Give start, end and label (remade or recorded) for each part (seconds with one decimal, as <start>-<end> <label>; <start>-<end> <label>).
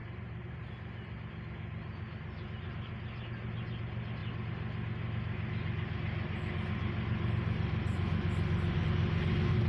0.0-0.7 remade; 0.7-9.7 recorded